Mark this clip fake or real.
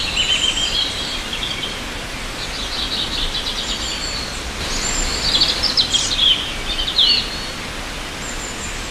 real